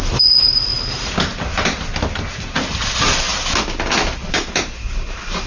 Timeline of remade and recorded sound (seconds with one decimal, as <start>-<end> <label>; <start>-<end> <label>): 0.0-0.7 remade; 0.7-1.2 recorded; 1.2-1.9 remade; 1.9-2.4 recorded; 2.4-3.3 remade; 3.3-4.3 recorded; 4.3-5.5 remade